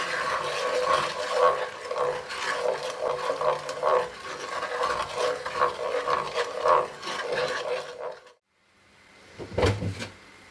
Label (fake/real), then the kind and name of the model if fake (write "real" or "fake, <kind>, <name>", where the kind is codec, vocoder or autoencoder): real